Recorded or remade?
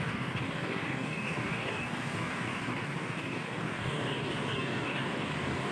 remade